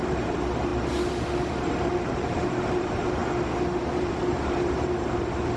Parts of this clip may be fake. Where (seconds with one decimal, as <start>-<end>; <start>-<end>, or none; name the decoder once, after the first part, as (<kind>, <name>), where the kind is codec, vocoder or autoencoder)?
0.0-0.7 (vocoder, BigVGAN v2); 1.5-3.2; 3.9-5.6